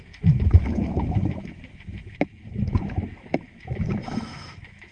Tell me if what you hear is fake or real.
fake